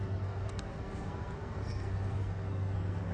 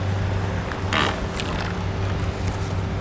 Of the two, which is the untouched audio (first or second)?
second